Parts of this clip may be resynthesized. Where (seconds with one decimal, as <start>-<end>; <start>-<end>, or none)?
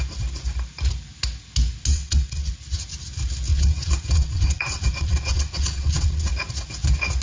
1.9-2.5; 3.5-6.3